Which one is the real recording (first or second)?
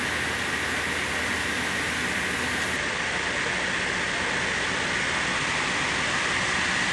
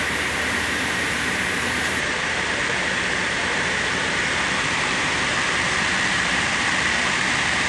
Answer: first